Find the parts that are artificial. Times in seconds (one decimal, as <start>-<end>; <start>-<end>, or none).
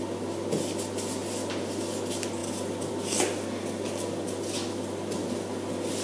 none